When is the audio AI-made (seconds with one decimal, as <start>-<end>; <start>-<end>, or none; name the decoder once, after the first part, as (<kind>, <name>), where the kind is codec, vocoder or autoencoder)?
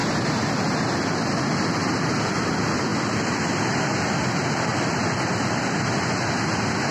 4.7-5.8 (vocoder, BigVGAN v2)